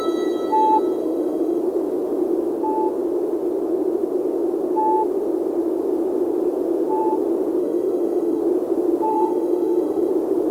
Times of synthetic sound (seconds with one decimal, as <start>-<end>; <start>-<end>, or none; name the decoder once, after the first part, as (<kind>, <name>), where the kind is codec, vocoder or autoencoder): 1.0-1.6 (autoencoder, DAC-VAE); 7.6-8.4; 9.1-10.1